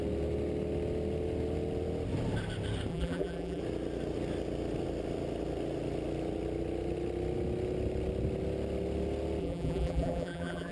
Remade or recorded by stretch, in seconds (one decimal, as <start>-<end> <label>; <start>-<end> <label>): 0.0-2.9 recorded; 2.9-3.6 remade; 3.6-9.4 recorded; 9.4-10.7 remade